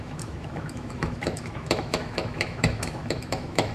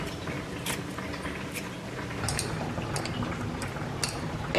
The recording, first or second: second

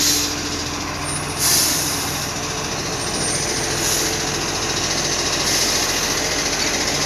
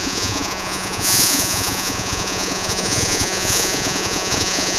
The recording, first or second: first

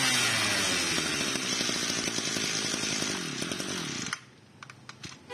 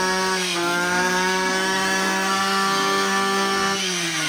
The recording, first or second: first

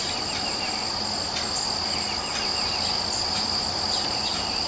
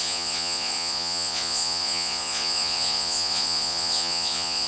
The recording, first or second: first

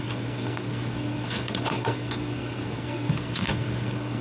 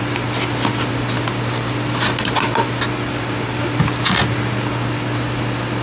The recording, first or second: second